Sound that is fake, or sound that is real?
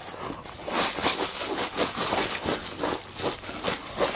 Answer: real